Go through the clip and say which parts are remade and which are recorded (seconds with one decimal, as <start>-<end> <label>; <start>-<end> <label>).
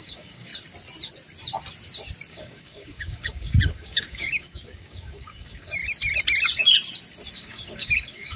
0.0-0.5 remade; 0.5-2.3 recorded; 2.3-5.8 remade; 5.8-7.3 recorded; 7.3-8.4 remade